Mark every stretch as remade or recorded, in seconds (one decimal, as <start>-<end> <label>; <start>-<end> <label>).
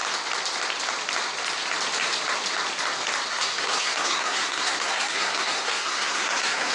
0.0-3.3 recorded; 3.3-6.7 remade